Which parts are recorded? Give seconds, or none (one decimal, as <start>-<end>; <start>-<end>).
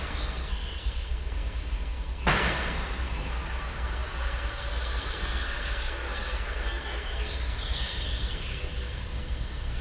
none